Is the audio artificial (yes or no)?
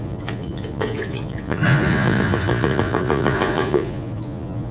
yes